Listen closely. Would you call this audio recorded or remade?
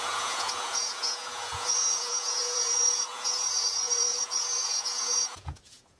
remade